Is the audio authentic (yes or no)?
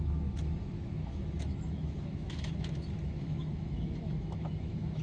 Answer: no